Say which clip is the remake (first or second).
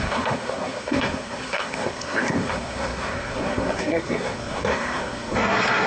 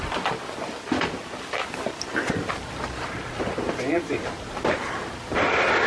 first